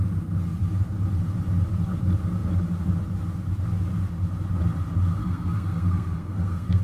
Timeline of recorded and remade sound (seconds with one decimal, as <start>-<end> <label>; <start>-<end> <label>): 0.0-5.2 recorded; 5.2-6.8 remade